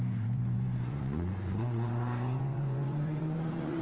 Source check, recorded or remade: remade